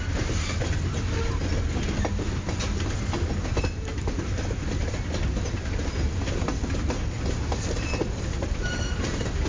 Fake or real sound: real